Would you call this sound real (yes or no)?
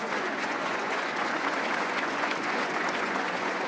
no